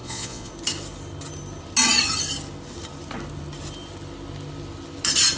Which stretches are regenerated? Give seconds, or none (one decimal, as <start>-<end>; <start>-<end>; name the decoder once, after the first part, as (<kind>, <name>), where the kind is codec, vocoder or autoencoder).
0.0-0.5 (vocoder, Vocos)